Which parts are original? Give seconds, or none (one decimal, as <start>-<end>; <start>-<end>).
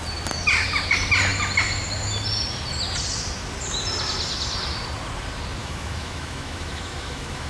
0.0-5.6